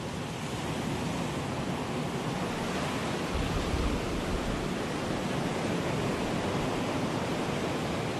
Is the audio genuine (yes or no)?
yes